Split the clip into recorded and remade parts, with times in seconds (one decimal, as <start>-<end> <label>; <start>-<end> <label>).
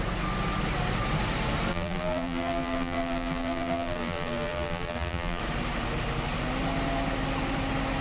0.0-1.7 recorded; 1.7-5.4 remade; 5.4-8.0 recorded